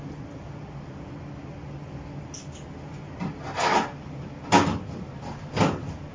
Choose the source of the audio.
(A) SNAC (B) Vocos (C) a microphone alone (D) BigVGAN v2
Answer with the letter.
C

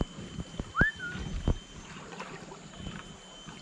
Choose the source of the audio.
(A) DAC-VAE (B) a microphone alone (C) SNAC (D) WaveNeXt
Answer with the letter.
B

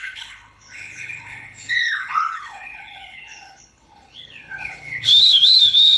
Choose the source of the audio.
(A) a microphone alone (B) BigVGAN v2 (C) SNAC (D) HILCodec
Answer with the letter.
D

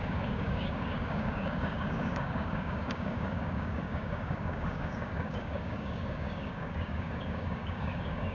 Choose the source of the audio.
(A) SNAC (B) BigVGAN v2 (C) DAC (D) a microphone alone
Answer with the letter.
C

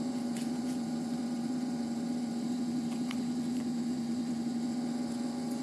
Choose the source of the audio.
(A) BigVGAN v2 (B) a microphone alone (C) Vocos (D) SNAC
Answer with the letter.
C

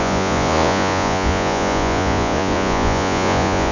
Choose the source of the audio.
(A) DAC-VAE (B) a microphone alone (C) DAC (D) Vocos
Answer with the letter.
D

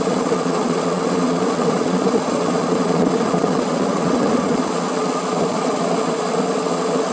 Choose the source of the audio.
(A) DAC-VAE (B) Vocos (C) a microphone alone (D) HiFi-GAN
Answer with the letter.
B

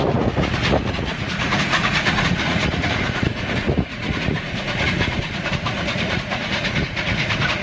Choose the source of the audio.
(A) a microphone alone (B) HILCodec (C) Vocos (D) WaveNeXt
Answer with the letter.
C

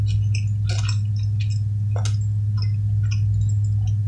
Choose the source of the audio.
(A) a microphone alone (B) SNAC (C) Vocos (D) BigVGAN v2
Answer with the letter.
A